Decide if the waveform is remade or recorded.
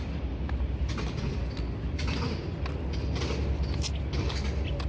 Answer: recorded